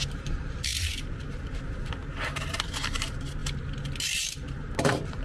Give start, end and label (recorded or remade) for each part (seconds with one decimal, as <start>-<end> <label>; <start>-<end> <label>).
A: 0.0-3.4 remade; 3.4-4.0 recorded; 4.0-5.2 remade